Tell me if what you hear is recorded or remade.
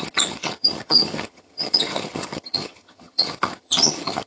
remade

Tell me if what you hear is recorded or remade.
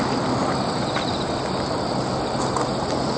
recorded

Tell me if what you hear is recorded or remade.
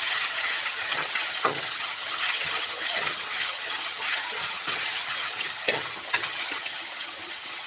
remade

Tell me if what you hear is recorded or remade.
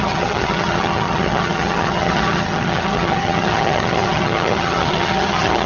remade